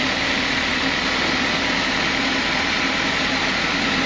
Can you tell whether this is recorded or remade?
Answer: recorded